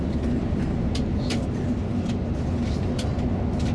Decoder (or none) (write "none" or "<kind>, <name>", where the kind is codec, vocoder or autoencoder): none